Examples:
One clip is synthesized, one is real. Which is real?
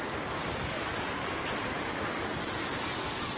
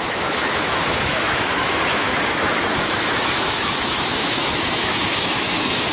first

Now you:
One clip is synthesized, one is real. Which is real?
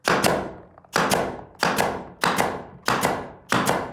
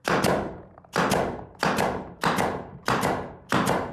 first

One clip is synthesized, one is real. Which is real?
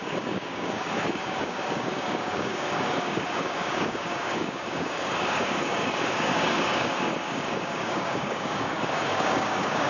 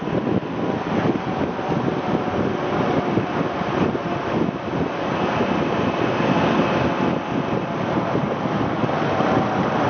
second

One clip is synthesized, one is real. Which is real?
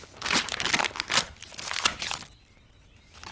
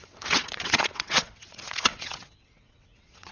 first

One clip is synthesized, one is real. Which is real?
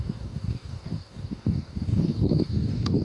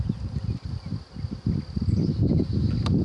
second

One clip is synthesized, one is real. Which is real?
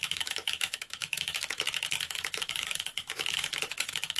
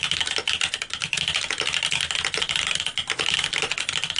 second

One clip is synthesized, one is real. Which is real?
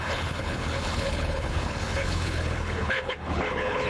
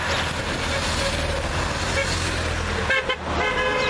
second